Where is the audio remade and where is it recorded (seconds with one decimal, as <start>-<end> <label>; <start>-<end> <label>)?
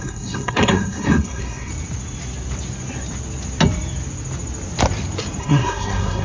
0.0-1.7 remade; 1.7-5.4 recorded; 5.4-6.2 remade